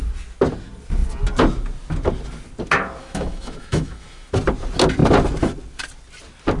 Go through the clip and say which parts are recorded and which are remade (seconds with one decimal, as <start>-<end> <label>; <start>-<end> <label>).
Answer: 0.0-3.0 recorded; 3.0-4.3 remade; 4.3-6.6 recorded